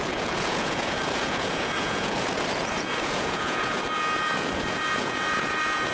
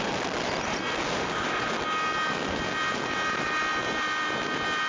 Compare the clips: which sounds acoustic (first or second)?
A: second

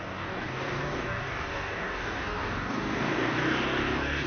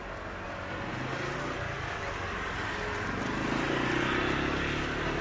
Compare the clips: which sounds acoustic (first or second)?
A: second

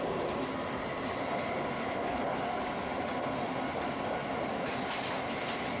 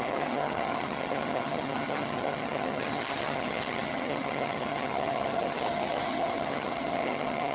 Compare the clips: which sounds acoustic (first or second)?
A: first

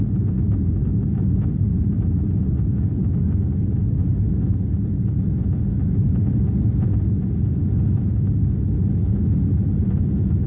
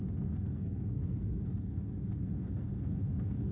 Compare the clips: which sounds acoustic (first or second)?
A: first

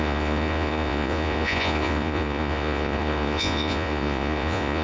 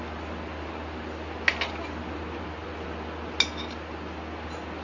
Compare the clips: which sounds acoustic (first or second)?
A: second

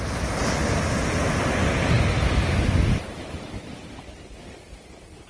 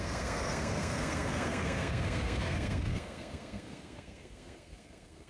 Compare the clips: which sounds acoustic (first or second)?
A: first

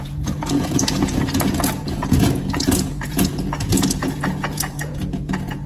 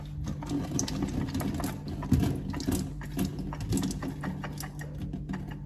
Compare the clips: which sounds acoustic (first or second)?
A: second